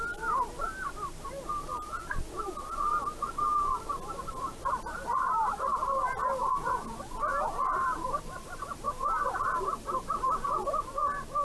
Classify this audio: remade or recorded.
recorded